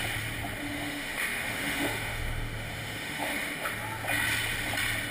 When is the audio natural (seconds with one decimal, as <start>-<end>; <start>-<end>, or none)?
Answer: 0.0-0.6; 3.7-5.1